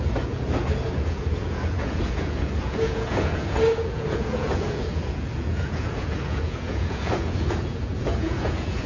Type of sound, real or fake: fake